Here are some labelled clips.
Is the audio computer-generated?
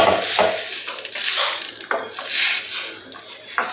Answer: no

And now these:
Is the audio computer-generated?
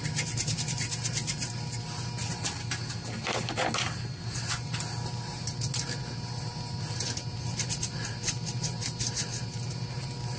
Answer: no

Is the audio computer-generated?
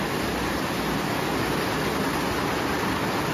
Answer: no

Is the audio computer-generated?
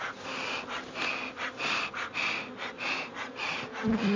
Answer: no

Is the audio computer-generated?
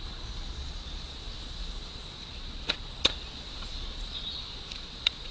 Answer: yes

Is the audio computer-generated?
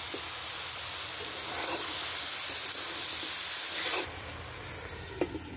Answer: no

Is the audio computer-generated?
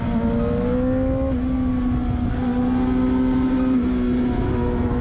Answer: no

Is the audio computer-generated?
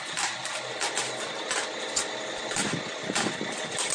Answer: no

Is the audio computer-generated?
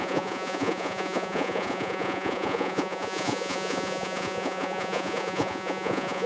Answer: yes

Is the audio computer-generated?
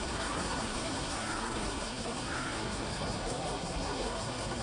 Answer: yes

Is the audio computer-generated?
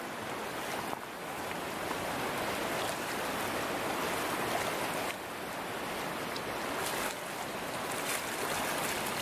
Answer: no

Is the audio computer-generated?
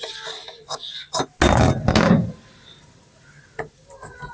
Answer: no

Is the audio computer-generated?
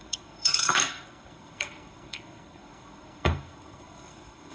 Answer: yes